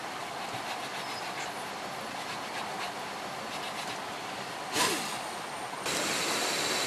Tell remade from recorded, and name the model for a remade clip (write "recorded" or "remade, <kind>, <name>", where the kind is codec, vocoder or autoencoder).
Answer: recorded